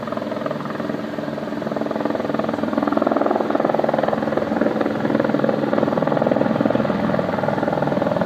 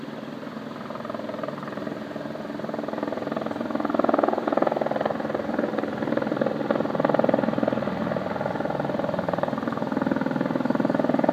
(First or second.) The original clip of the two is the first